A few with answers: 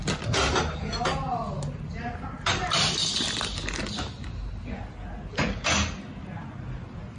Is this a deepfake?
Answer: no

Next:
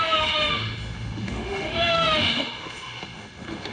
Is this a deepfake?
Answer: yes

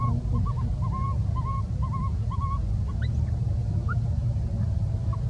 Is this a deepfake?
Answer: no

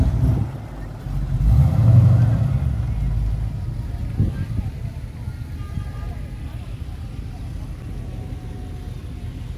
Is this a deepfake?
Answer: no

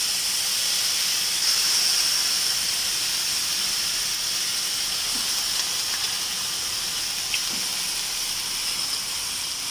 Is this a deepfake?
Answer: no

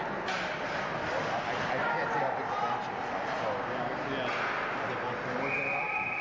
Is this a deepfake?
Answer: no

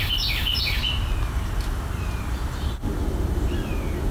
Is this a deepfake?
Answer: no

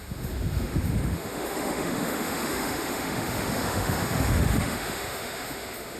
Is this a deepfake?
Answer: yes